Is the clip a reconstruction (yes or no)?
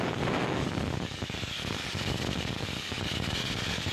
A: yes